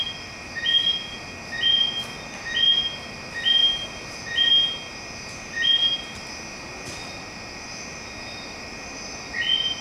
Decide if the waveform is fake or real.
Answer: real